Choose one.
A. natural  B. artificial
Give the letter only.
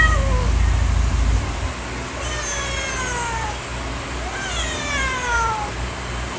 A